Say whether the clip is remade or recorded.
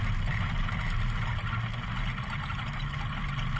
recorded